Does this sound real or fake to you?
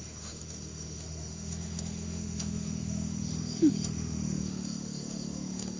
fake